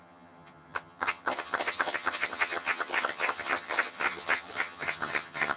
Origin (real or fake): fake